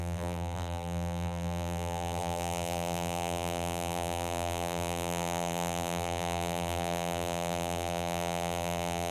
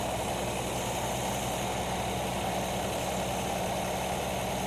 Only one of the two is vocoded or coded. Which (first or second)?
first